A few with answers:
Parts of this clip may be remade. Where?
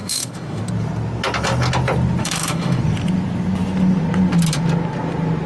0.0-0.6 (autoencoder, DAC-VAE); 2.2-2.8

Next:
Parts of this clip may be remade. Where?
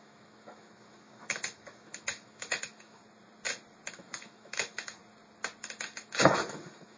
0.0-3.0 (autoencoder, DAC-VAE); 3.9-5.0; 5.6-7.0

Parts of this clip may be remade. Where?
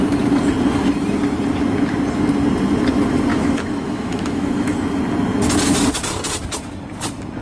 3.3-5.0 (autoencoder, DAC-VAE)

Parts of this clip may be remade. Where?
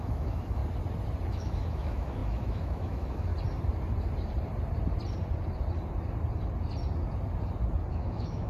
0.0-0.6 (autoencoder, DAC-VAE); 1.3-3.3; 7.9-8.5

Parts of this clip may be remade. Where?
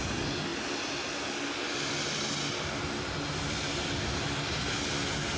none